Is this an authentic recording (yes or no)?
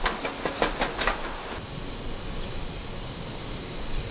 yes